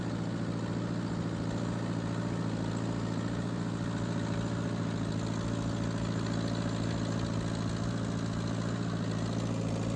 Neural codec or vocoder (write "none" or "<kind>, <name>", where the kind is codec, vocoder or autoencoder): none